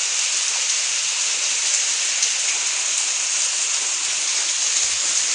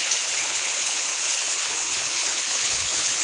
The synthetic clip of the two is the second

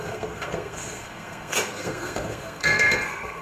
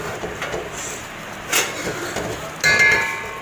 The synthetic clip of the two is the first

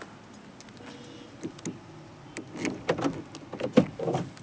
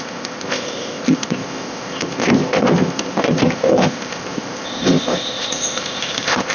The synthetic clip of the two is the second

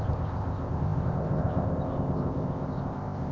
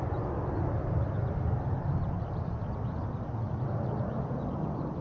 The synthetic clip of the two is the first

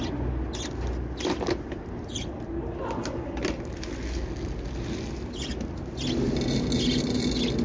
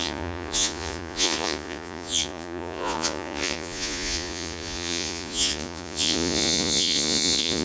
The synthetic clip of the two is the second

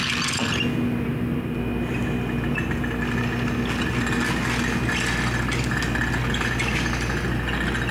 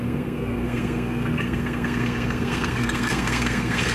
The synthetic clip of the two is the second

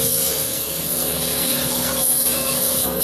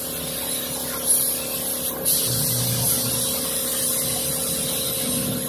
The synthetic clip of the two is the first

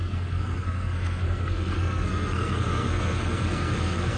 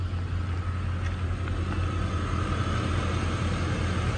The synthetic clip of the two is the first